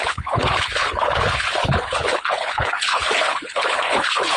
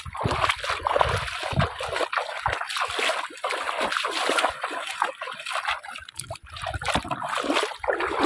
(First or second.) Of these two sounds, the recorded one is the second